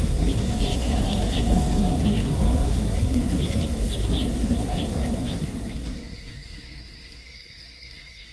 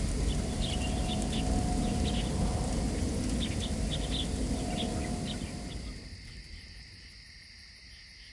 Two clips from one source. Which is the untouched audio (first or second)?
second